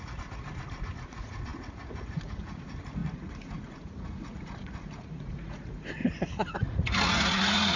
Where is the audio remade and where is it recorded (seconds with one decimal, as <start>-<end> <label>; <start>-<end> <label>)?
0.0-7.8 remade